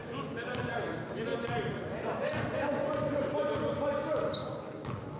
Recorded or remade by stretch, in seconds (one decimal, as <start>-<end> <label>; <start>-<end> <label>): 0.0-0.7 remade; 0.7-4.4 recorded; 4.4-5.2 remade